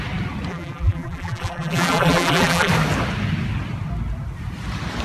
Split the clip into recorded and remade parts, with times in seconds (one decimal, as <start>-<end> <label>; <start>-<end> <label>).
0.0-0.5 recorded; 0.5-2.7 remade; 2.7-5.0 recorded